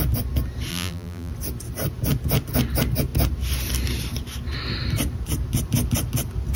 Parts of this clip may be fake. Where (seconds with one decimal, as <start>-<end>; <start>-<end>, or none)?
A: 0.7-1.3